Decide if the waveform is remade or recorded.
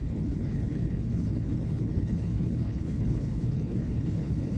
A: remade